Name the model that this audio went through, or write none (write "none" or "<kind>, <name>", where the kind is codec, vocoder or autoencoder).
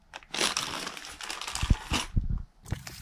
none